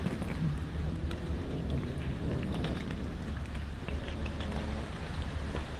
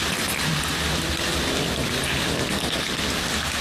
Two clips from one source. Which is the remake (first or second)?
first